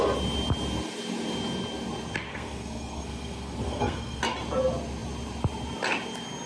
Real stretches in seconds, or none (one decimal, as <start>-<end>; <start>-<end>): 0.0-2.3; 4.2-6.5